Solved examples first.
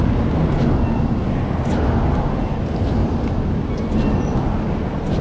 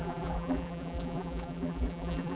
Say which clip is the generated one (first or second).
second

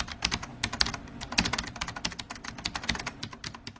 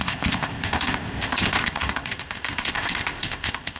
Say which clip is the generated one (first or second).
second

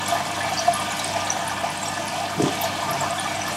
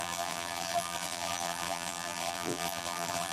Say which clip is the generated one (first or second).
second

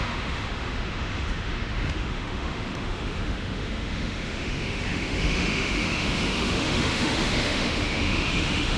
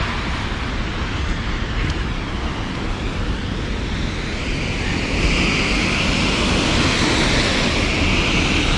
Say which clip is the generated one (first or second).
first